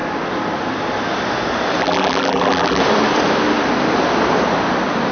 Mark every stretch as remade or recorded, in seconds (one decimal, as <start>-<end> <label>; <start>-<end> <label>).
0.0-1.8 recorded; 1.8-2.8 remade; 2.8-5.1 recorded